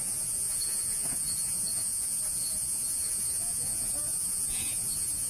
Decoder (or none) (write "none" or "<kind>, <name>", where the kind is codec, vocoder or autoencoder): vocoder, Vocos